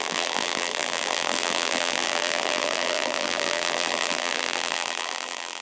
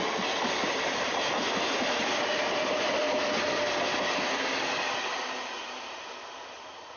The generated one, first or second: first